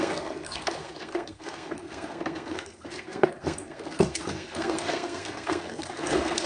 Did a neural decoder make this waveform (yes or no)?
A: yes